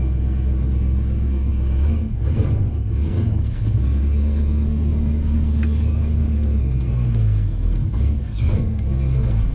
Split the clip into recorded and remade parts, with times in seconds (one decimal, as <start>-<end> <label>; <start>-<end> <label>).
0.0-9.5 remade